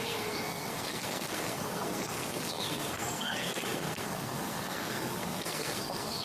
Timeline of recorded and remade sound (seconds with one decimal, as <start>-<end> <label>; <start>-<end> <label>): 0.0-6.2 remade